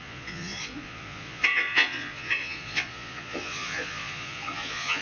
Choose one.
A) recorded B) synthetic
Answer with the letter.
B